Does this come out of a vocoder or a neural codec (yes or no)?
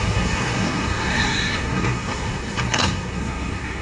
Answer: yes